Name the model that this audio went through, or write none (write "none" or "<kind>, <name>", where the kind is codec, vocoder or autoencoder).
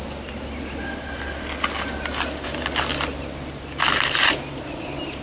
none